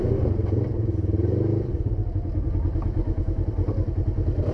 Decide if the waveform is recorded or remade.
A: recorded